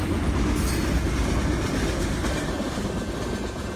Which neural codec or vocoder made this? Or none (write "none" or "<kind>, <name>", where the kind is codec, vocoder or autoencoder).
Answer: none